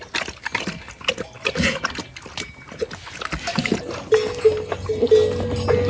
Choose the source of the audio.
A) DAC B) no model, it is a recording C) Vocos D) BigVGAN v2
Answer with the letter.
B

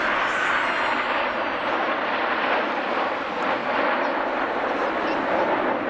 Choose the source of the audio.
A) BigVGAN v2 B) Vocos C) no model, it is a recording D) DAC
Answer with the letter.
C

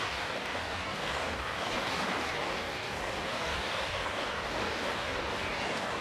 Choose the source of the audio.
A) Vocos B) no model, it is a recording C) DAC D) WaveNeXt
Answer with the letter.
C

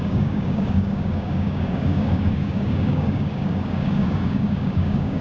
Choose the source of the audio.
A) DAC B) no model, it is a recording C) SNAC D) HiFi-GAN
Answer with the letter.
A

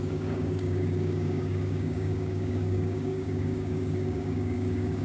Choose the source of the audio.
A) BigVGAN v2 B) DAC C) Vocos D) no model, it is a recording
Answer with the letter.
B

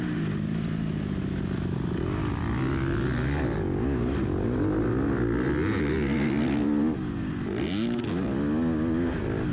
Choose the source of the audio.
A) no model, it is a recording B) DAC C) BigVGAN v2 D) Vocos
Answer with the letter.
A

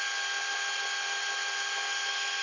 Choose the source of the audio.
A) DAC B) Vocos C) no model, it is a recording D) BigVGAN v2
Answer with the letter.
C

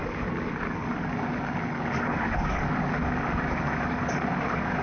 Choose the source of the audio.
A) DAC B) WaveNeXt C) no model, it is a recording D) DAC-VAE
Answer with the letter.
A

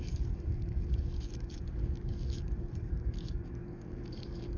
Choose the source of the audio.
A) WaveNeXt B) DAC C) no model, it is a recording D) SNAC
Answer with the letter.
B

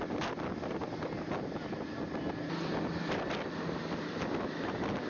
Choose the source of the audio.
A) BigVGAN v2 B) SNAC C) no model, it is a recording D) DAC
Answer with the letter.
C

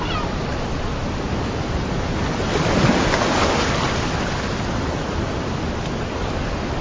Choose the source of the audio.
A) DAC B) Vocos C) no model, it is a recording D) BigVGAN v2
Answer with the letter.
C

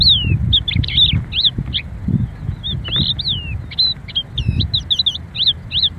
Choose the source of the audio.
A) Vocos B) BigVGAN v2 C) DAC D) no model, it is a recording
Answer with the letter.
D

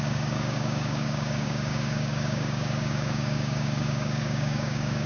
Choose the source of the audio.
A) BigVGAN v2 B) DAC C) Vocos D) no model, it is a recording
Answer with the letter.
B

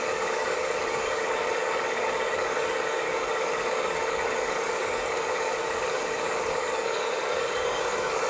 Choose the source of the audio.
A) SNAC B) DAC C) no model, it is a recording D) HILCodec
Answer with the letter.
B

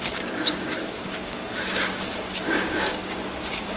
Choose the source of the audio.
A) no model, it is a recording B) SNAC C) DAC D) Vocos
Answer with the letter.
C